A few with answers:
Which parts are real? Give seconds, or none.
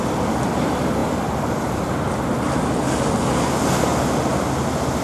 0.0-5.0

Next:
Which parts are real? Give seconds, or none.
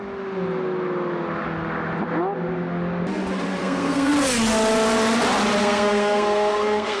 0.0-3.6; 4.1-5.6